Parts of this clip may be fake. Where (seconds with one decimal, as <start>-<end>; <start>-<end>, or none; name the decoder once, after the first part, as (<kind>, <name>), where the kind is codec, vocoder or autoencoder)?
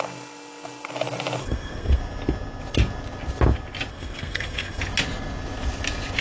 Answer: 1.4-2.0 (codec, SNAC); 3.9-4.8